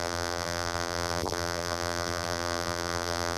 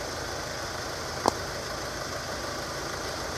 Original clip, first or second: second